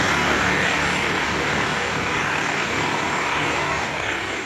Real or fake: fake